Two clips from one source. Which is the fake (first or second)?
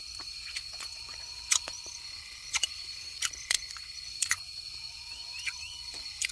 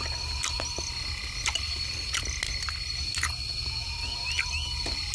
first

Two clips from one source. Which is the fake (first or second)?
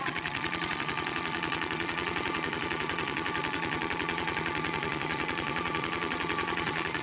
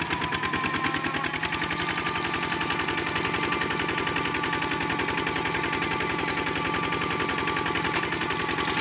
first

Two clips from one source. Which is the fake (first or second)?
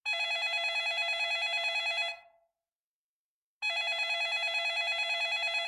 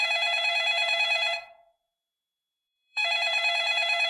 second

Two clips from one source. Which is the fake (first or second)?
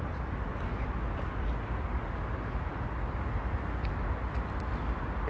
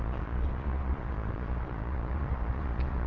second